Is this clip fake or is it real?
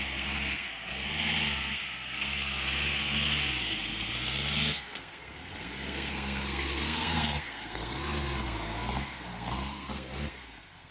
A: fake